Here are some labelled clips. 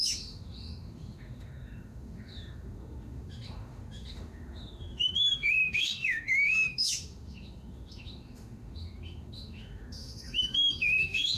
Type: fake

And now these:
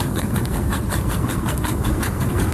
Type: fake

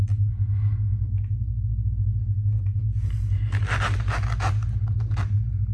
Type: real